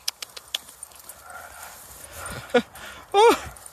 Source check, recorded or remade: recorded